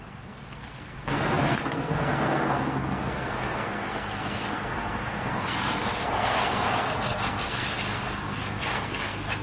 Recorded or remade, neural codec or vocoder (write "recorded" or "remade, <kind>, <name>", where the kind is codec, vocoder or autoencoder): remade, codec, SNAC